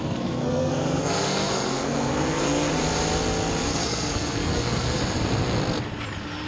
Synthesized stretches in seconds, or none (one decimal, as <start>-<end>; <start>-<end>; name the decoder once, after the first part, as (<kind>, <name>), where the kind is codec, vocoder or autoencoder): 0.0-2.7 (codec, SNAC); 3.7-5.0